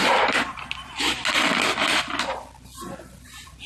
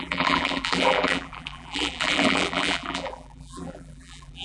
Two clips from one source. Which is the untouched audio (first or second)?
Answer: first